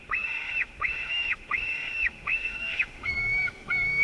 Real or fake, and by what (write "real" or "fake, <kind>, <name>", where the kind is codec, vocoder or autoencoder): fake, autoencoder, DAC-VAE